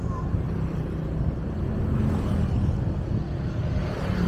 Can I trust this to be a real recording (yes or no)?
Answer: yes